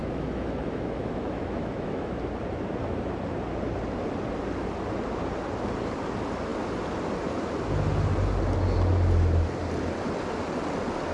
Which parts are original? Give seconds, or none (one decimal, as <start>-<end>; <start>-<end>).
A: 2.1-11.1